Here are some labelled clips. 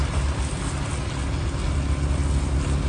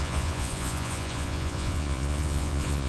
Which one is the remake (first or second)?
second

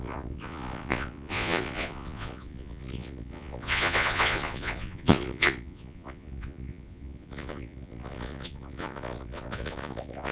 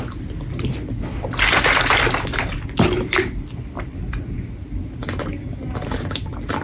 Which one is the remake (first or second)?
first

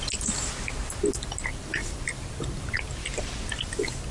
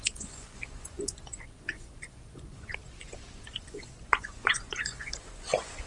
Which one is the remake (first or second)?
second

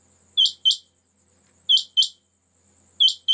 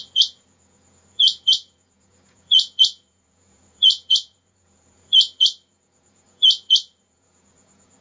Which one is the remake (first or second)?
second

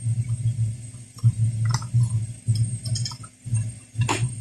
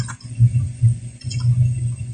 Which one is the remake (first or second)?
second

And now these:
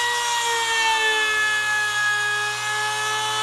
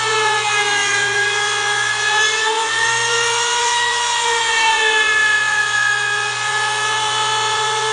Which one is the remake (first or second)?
second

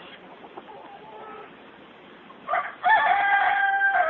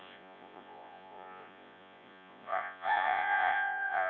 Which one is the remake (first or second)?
second